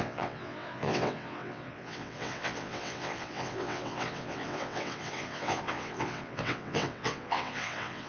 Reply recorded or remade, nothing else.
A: remade